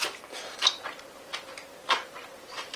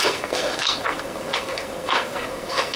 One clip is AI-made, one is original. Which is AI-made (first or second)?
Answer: second